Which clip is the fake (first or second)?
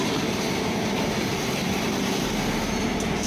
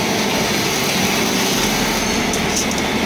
first